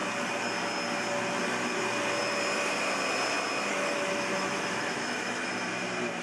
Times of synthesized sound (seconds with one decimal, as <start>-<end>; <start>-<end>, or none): 3.7-5.5